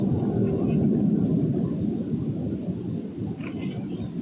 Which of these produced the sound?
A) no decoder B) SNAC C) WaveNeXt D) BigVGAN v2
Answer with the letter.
A